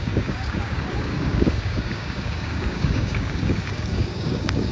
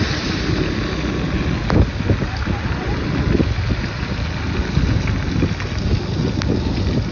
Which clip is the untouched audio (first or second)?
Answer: second